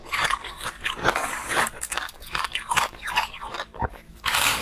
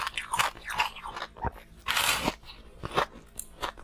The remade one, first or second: first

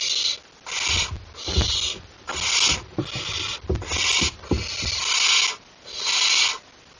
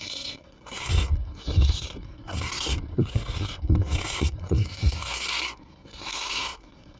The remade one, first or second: second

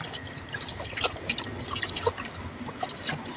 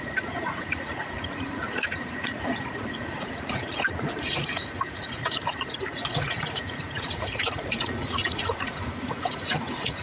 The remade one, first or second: second